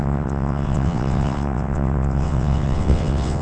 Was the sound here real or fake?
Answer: fake